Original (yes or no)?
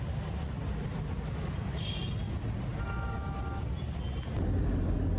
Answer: yes